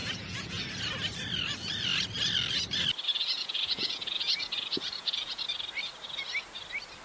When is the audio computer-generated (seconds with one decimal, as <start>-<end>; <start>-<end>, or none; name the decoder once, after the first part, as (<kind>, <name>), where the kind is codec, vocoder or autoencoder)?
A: 0.0-0.6 (vocoder, Vocos); 3.1-5.4